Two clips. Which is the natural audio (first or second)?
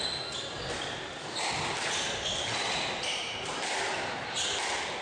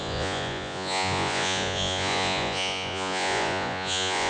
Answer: first